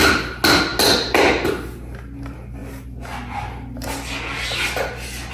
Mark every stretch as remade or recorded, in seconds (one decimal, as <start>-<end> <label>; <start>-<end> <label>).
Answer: 0.0-5.3 recorded